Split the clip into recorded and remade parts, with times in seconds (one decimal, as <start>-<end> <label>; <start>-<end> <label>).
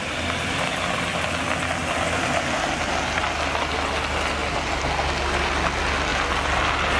0.0-7.0 recorded